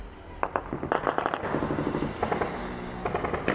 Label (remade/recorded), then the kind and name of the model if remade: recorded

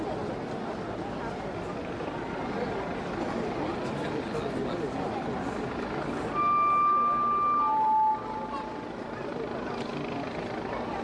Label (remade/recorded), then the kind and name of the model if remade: recorded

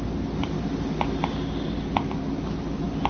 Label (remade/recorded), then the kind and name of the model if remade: recorded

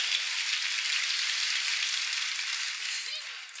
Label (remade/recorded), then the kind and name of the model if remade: recorded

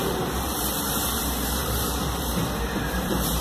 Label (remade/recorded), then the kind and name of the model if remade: remade, vocoder, BigVGAN v2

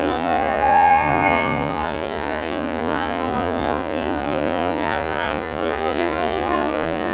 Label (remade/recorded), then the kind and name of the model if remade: remade, vocoder, Vocos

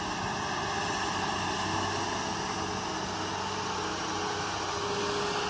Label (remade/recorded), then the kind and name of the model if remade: recorded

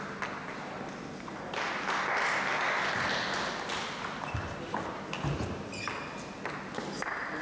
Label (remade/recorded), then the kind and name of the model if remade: recorded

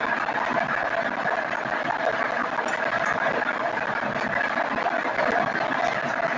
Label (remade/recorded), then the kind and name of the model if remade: recorded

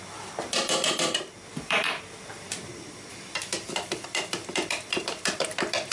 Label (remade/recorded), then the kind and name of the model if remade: remade, vocoder, BigVGAN v2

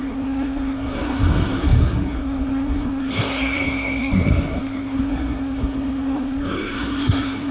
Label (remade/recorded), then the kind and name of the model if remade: remade, codec, SNAC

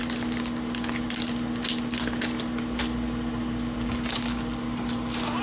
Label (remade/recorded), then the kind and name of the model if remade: recorded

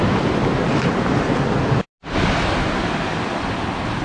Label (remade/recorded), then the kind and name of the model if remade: recorded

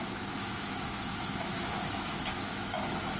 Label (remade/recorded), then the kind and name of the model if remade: remade, autoencoder, DAC-VAE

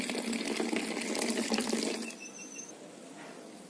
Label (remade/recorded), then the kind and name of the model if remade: remade, vocoder, BigVGAN v2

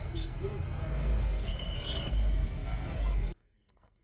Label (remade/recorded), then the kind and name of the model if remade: remade, codec, SNAC